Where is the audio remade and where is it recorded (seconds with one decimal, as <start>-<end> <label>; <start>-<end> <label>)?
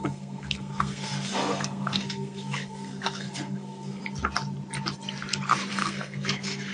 0.0-4.0 remade; 4.0-5.7 recorded; 5.7-6.7 remade